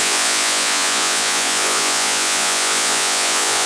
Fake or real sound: fake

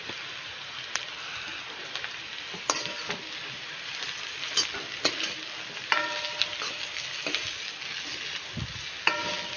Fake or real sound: real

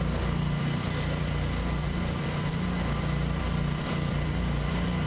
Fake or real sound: fake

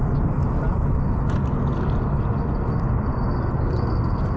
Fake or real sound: real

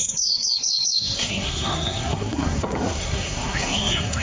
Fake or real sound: fake